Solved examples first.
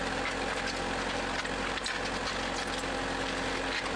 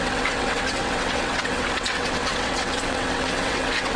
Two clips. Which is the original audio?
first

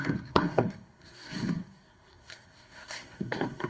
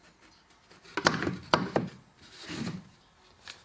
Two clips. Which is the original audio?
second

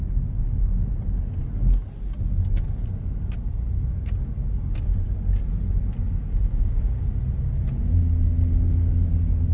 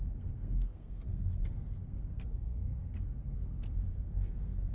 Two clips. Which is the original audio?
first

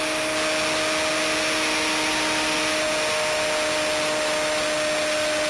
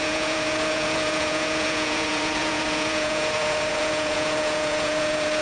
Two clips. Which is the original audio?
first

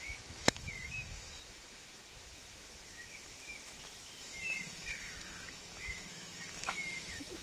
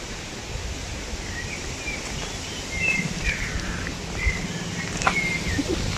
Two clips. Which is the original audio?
second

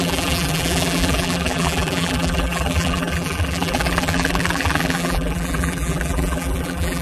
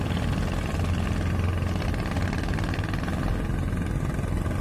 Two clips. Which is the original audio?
second